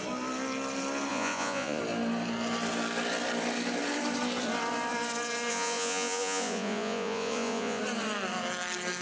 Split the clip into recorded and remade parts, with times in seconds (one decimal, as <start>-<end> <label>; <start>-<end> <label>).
0.0-1.1 recorded; 1.1-1.8 remade; 1.8-5.5 recorded; 5.5-7.8 remade; 7.8-9.0 recorded